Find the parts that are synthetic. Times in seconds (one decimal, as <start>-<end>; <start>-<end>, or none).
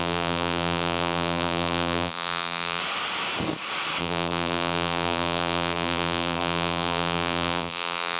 0.0-2.8; 4.0-8.2